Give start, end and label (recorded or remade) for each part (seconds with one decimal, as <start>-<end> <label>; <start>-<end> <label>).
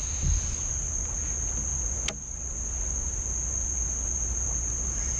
0.0-5.2 recorded